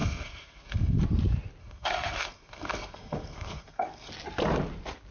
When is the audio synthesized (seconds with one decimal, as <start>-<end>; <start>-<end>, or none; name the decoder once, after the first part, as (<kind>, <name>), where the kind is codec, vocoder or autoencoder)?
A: 0.0-1.0 (codec, SNAC); 1.6-4.1